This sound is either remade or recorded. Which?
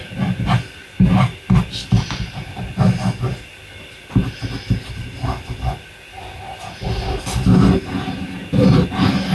recorded